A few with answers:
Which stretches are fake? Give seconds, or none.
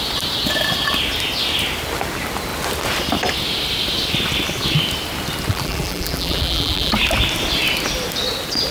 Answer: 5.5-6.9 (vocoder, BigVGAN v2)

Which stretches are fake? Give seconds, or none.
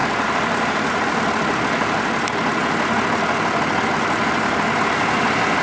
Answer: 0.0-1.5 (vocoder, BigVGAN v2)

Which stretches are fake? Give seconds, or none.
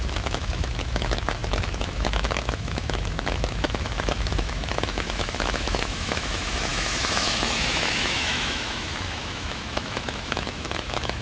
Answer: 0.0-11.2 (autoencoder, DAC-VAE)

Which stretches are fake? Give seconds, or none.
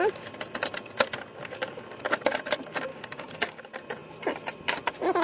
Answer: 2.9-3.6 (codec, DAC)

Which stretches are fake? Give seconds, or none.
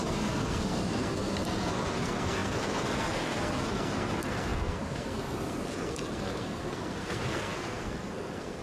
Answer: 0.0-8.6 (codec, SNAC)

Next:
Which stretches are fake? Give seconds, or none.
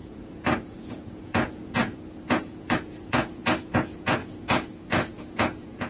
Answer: 0.0-5.9 (vocoder, Vocos)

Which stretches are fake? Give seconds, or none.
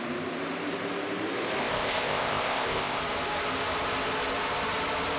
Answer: 1.6-3.0 (codec, ZipCodec)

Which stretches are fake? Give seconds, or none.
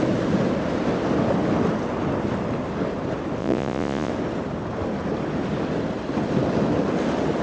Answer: 3.4-4.1 (vocoder, Vocos)